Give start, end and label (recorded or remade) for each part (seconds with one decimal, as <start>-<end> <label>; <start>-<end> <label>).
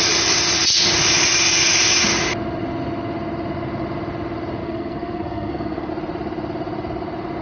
0.0-4.6 recorded; 4.6-5.9 remade; 5.9-7.4 recorded